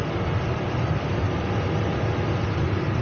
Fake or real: real